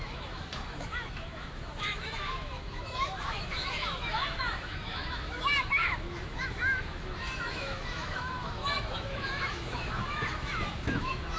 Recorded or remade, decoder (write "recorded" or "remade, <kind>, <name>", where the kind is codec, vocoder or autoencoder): remade, autoencoder, DAC-VAE